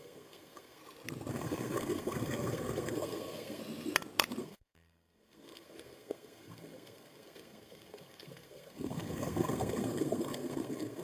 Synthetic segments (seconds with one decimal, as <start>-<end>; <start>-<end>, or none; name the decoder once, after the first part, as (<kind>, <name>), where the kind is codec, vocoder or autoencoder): 0.0-0.8 (codec, SNAC); 1.3-3.6; 4.4-11.0